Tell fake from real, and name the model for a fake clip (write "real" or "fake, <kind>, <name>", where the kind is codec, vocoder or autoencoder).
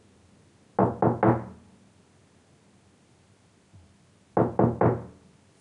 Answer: real